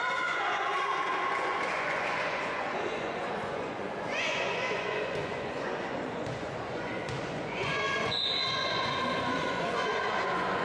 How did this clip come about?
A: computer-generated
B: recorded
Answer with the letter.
A